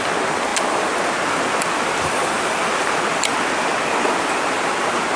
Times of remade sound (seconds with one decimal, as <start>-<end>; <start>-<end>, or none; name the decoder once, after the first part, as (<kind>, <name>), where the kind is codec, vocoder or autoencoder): 0.5-3.6 (vocoder, BigVGAN v2)